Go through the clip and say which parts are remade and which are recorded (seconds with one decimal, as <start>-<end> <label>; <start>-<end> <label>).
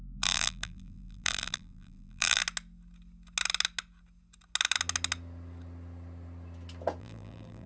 0.0-2.4 remade; 2.4-7.0 recorded; 7.0-7.7 remade